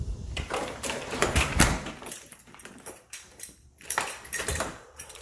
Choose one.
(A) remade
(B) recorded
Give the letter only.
A